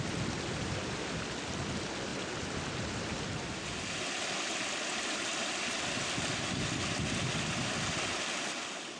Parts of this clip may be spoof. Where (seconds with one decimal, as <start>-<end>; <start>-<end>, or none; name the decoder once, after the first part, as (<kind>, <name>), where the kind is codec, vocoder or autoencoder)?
none